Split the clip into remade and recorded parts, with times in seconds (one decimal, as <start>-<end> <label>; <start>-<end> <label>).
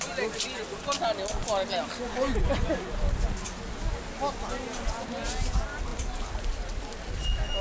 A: 0.0-7.6 recorded